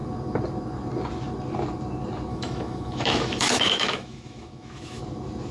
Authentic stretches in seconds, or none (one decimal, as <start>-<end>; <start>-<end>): 0.0-2.3; 5.0-5.5